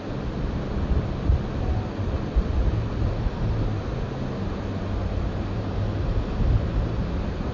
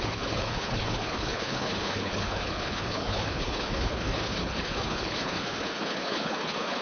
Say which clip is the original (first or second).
first